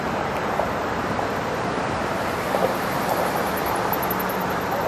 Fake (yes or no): yes